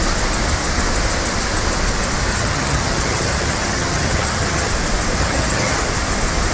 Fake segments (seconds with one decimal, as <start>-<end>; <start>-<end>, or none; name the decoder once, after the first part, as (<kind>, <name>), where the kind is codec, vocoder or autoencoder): 2.3-4.7 (vocoder, HiFi-GAN); 5.2-5.8

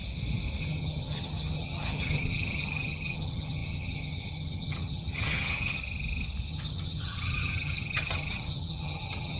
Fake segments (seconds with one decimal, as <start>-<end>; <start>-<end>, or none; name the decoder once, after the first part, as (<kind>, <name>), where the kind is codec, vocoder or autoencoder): 0.6-5.8 (vocoder, HiFi-GAN); 6.5-9.4

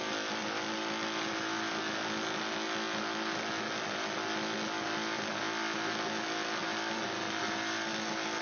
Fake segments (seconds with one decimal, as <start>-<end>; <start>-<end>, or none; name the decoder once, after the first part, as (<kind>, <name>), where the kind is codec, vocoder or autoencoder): none

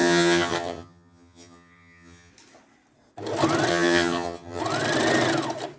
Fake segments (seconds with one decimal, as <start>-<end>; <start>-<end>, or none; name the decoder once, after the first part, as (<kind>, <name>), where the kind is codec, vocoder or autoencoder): 0.0-2.3 (vocoder, HiFi-GAN); 3.7-4.6

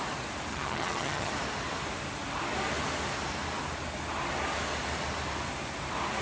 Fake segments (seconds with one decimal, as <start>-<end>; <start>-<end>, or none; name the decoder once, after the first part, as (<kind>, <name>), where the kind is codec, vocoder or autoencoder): 0.5-1.3 (vocoder, HiFi-GAN)